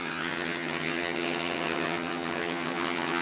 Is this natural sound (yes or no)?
no